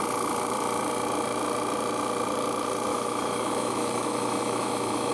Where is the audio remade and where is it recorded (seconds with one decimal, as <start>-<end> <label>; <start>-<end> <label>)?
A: 0.0-2.9 recorded; 2.9-5.1 remade